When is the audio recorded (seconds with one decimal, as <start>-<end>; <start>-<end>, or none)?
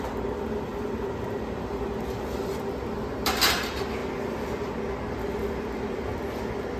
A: 0.0-6.8